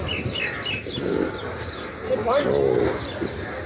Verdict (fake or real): real